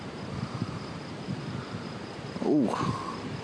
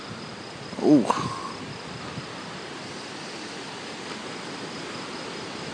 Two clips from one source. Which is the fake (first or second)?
first